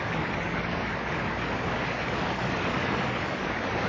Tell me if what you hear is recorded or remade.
remade